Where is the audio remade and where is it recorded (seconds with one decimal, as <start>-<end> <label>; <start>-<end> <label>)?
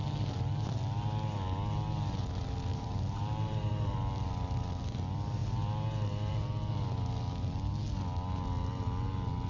0.0-2.7 recorded; 2.7-3.7 remade; 3.7-9.5 recorded